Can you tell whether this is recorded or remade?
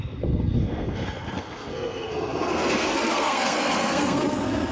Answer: remade